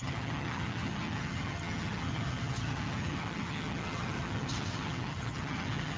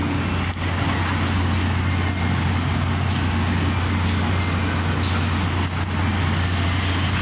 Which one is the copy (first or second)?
first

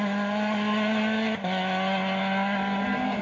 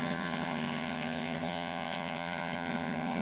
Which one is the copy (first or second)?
second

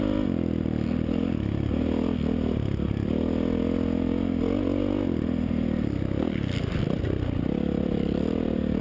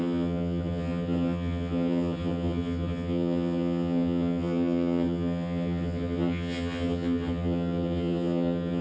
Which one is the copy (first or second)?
second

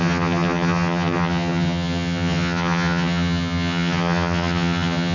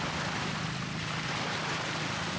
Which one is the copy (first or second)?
first